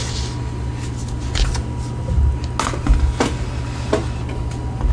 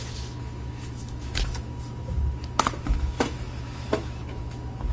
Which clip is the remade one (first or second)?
second